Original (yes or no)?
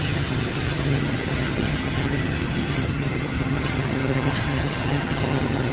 no